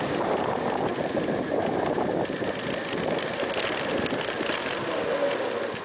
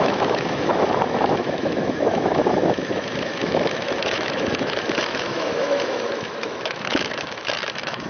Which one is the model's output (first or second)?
second